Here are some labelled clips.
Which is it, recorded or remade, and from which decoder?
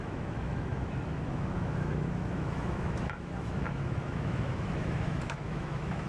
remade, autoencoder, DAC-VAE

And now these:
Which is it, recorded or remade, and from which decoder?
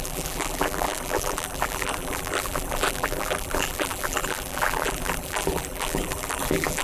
remade, vocoder, BigVGAN v2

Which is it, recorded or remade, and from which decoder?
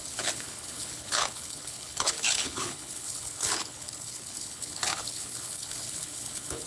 remade, codec, HILCodec